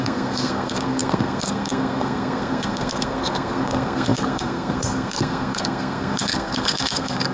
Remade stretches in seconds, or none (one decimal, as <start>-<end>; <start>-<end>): 0.0-7.3